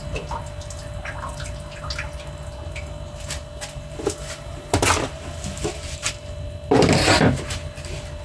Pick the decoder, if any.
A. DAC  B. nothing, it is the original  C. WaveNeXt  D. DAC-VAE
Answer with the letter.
B